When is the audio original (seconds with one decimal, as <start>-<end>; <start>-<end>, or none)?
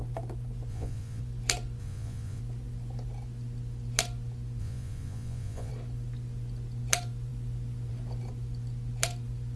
0.0-0.7; 1.2-1.8; 2.4-4.6; 5.7-9.6